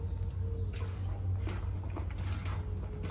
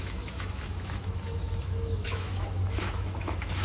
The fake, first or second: second